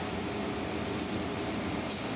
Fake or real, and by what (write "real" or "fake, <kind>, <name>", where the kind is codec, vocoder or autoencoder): real